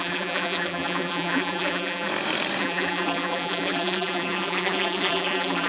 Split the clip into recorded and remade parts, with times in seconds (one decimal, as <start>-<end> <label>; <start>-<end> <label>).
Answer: 0.0-2.1 remade; 2.1-2.6 recorded; 2.6-5.7 remade